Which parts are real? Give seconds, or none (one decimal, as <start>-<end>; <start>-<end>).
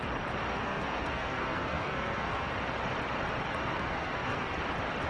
0.0-0.5; 2.5-3.5; 4.6-5.1